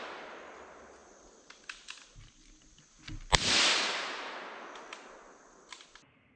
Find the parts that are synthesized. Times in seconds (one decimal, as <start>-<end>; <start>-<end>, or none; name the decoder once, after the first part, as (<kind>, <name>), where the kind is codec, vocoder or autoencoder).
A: none